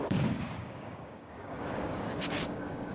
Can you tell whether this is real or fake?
fake